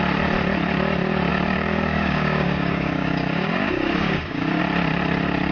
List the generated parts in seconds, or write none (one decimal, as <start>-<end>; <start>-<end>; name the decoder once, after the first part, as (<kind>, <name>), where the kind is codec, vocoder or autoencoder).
1.3-4.6 (codec, DAC)